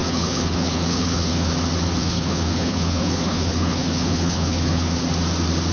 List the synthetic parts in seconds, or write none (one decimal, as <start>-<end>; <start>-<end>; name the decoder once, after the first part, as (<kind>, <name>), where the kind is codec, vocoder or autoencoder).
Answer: 0.0-1.5 (codec, HILCodec); 2.0-5.0